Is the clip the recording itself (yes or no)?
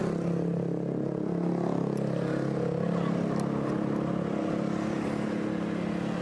yes